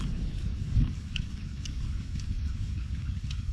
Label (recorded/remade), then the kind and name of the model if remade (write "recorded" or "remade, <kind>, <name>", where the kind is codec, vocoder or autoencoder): remade, codec, DAC